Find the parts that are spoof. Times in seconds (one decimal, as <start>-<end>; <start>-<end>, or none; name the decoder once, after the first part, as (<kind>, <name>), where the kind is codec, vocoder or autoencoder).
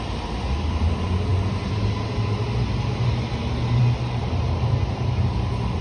3.8-5.2 (vocoder, BigVGAN v2)